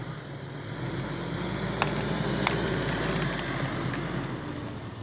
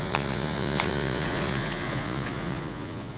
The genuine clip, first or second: first